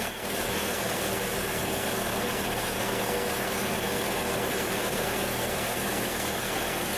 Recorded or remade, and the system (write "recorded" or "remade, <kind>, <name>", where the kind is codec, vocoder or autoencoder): remade, codec, SNAC